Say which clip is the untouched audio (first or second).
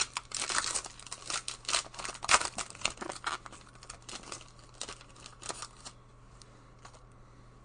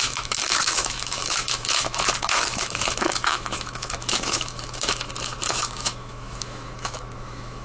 first